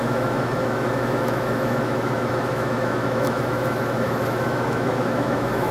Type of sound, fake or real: fake